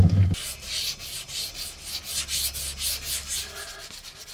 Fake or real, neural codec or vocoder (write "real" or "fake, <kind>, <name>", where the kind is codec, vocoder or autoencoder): real